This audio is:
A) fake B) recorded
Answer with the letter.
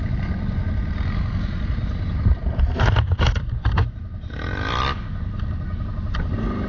B